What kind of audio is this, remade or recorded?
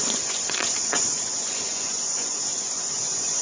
remade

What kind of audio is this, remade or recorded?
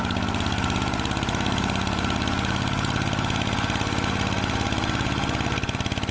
recorded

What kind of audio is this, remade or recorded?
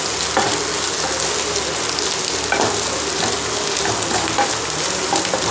recorded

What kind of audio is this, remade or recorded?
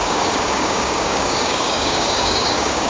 remade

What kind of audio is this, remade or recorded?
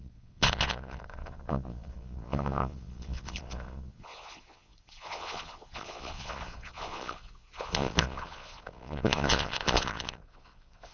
remade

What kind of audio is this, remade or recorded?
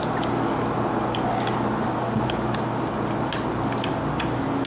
recorded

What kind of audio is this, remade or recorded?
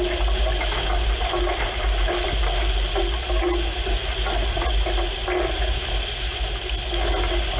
recorded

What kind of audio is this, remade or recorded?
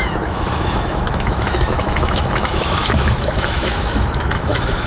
remade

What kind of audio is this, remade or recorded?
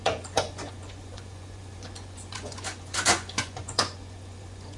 remade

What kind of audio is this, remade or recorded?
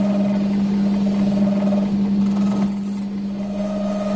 recorded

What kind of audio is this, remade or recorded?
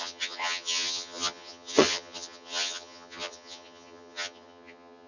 remade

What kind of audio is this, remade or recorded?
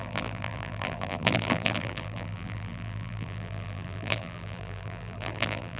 remade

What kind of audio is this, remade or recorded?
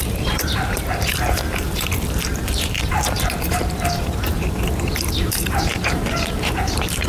remade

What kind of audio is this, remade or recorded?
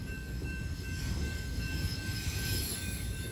remade